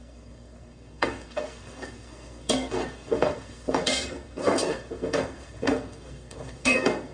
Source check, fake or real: fake